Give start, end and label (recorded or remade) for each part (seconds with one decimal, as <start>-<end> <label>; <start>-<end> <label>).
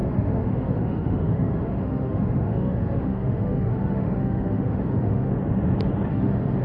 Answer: 0.0-5.3 remade; 5.3-6.1 recorded; 6.1-6.6 remade